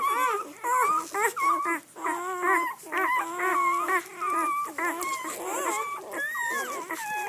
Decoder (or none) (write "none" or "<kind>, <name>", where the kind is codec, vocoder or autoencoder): none